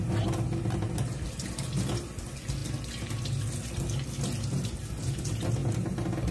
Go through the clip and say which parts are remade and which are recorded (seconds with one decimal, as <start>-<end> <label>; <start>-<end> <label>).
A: 0.0-6.3 recorded